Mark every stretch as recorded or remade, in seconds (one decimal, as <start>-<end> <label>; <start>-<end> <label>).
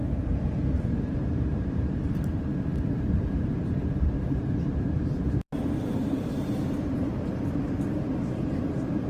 0.0-7.1 remade; 7.1-7.9 recorded; 7.9-9.1 remade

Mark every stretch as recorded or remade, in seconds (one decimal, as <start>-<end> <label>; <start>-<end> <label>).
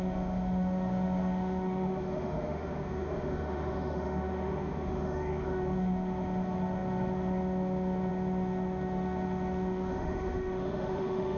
0.0-11.4 remade